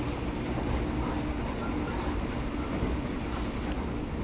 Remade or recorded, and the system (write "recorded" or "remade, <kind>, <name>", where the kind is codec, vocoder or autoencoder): recorded